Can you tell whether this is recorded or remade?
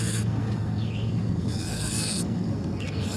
remade